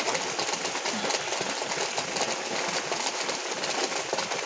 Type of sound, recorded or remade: recorded